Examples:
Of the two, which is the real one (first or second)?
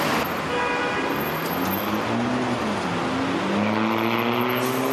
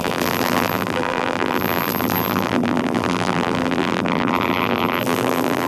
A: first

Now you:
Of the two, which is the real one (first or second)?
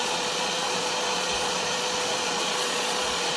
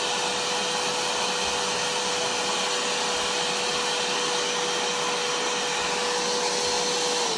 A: second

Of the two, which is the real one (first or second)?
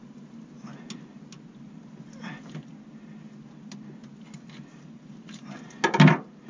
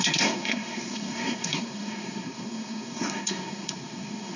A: first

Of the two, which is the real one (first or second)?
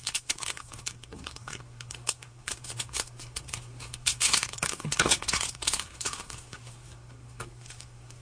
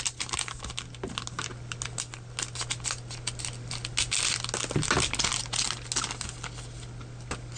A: second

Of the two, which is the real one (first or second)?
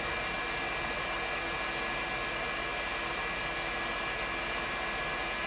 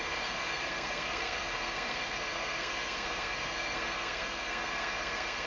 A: first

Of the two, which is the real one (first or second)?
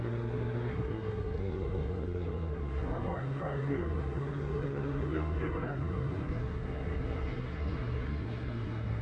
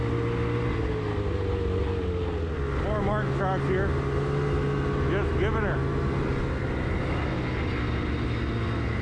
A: second